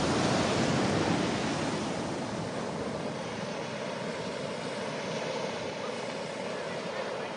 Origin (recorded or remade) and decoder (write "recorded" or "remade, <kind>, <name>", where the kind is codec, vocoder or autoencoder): recorded